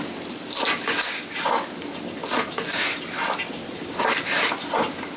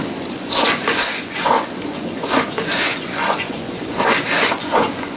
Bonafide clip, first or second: first